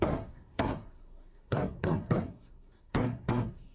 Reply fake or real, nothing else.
fake